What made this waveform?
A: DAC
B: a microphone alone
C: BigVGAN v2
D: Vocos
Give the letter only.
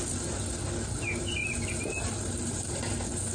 B